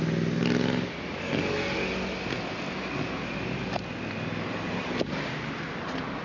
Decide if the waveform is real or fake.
real